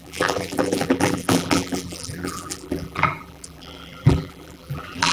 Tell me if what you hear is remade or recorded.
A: remade